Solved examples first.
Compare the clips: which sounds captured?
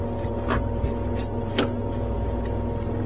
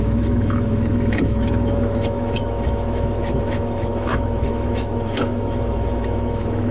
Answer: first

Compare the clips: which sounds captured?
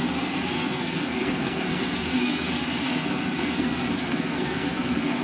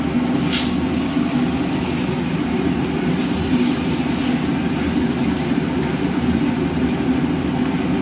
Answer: second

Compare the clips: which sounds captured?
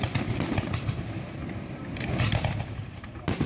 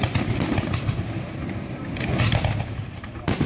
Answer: second